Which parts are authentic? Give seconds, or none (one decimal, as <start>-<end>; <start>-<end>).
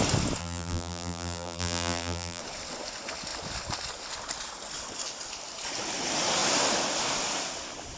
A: 0.0-0.4; 2.4-8.0